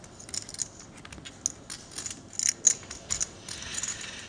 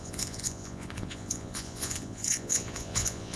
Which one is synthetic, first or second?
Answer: second